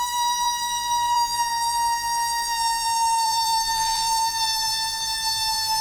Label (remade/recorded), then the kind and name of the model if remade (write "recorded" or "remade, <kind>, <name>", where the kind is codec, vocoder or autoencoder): remade, vocoder, BigVGAN v2